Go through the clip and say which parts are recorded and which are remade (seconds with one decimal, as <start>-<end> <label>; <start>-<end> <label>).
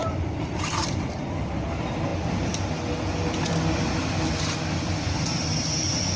0.0-0.6 remade; 0.6-6.2 recorded